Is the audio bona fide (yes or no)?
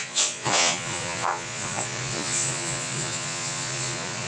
no